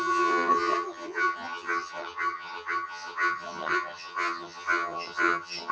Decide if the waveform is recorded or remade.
remade